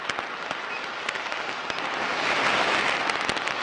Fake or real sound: real